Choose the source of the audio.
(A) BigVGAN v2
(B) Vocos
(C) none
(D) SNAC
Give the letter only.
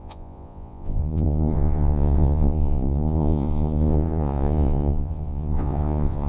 B